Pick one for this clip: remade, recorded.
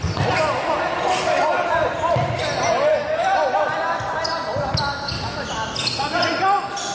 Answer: recorded